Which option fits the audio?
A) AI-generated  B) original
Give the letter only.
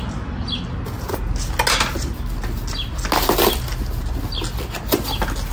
B